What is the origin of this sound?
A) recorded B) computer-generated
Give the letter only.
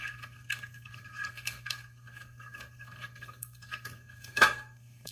B